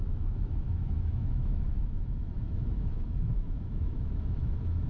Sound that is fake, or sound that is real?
fake